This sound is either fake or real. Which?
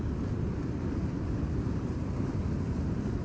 real